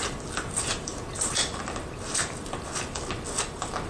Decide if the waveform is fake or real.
real